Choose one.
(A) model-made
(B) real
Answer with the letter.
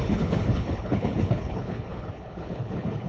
A